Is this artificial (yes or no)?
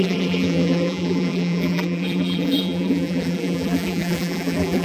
yes